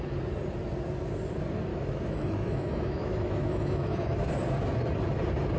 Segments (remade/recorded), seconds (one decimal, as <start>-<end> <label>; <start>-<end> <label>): 0.0-1.7 recorded; 1.7-4.3 remade; 4.3-5.6 recorded